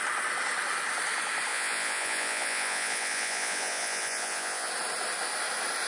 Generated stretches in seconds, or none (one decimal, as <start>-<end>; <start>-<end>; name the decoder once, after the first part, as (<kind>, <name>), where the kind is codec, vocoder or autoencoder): 1.5-4.7 (vocoder, Vocos)